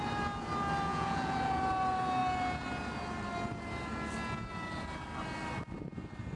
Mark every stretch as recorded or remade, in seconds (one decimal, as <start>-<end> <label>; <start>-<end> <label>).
0.0-0.9 recorded; 0.9-1.6 remade; 1.6-6.4 recorded